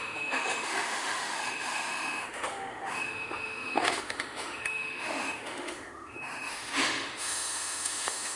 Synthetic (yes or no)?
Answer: yes